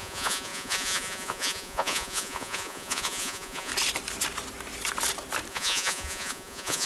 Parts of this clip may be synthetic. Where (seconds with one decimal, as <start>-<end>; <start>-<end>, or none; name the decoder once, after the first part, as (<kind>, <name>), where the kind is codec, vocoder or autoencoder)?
0.0-3.7 (vocoder, Vocos); 5.5-6.9